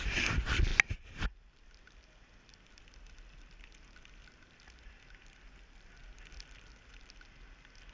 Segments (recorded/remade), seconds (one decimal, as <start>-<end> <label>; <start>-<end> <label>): 0.0-7.9 recorded